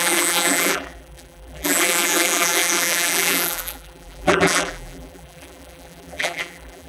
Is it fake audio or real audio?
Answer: fake